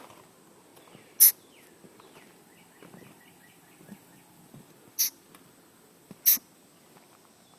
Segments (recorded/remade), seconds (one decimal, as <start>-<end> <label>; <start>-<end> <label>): 0.0-7.6 recorded